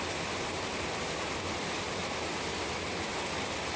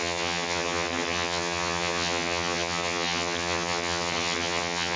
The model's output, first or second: second